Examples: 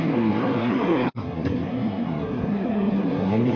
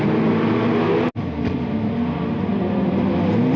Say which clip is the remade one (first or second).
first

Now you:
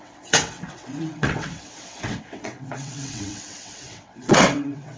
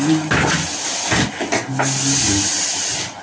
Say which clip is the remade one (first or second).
first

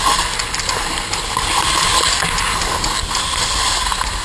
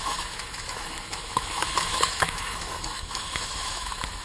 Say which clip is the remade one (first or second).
second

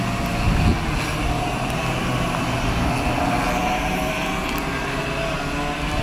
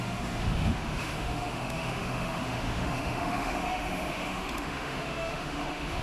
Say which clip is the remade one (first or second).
second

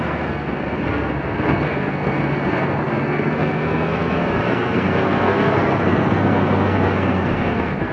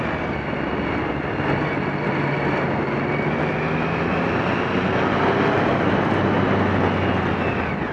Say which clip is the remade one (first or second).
first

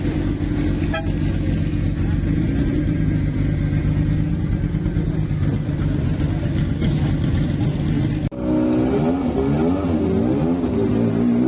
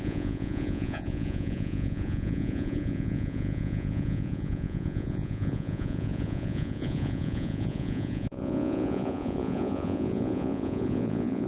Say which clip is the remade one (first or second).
second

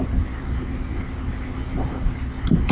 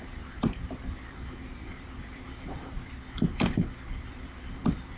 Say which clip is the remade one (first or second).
second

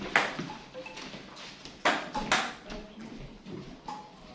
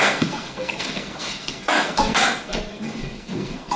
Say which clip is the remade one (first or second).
second